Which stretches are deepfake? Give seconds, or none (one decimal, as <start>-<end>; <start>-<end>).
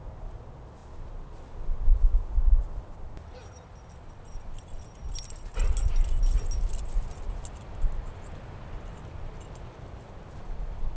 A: none